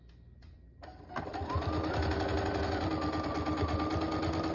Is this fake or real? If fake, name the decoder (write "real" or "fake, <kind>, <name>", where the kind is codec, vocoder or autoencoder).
real